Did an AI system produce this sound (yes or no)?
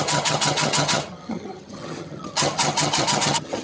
yes